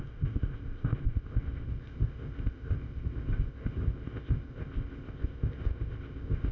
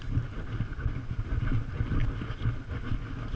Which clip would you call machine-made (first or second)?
first